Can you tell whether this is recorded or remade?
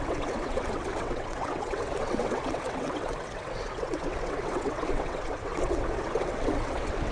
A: remade